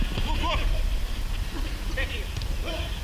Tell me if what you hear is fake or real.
fake